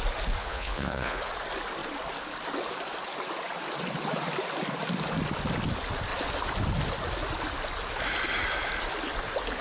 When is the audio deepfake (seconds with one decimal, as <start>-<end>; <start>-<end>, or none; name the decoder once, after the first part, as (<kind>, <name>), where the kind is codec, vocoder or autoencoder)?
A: 0.4-1.2 (vocoder, Vocos)

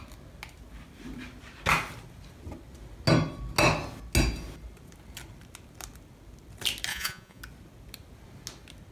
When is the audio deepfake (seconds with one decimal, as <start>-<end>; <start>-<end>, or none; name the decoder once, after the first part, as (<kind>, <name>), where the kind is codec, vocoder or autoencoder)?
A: 6.9-7.4 (vocoder, Vocos)

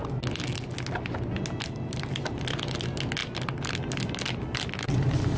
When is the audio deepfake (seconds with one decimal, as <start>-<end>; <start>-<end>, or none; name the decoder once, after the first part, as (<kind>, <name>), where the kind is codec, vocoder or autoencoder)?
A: none

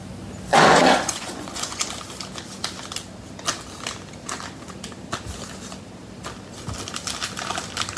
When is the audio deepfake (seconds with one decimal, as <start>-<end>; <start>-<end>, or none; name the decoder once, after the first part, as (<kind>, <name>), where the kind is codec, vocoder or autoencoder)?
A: 0.5-1.9 (vocoder, Vocos)

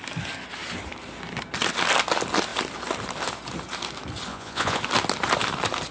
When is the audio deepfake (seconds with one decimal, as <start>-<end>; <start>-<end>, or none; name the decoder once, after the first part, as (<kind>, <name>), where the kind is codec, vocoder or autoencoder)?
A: 4.3-4.8 (vocoder, Vocos)